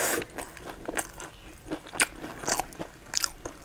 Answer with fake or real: real